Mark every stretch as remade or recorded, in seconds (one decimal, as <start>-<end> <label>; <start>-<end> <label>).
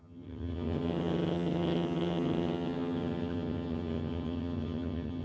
0.0-5.2 remade